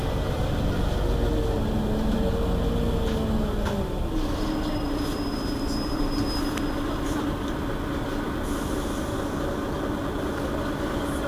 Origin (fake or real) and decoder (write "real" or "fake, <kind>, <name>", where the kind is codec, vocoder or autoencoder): real